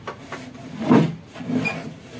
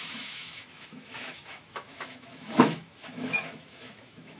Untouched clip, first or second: first